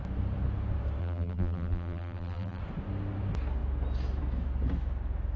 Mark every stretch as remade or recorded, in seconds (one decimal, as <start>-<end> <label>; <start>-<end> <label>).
0.0-1.0 recorded; 1.0-2.6 remade; 2.6-5.4 recorded